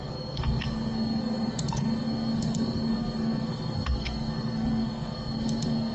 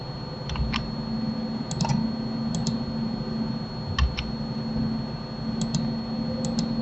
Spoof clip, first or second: first